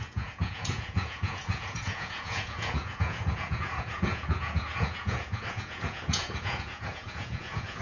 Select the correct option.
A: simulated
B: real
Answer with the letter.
A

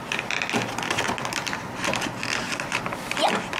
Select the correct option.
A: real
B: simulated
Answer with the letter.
A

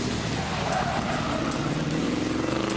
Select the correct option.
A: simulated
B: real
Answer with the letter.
B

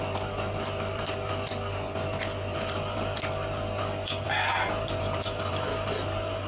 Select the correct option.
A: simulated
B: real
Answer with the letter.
B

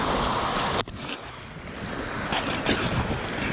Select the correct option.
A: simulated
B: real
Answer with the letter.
B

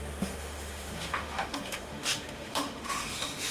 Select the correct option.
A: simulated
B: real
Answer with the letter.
A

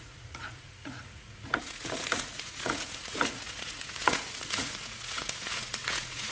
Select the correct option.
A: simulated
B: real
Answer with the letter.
A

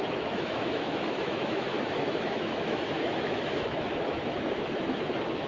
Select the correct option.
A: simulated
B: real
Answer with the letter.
A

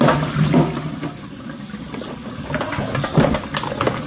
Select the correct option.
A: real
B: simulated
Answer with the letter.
A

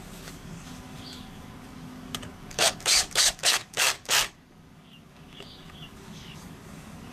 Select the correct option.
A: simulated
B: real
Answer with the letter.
A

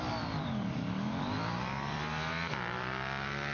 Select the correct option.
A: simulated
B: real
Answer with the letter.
A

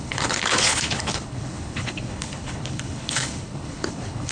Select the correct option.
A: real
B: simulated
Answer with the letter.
B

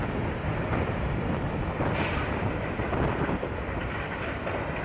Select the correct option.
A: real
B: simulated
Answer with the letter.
A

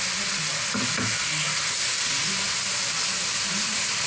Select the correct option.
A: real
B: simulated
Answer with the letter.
A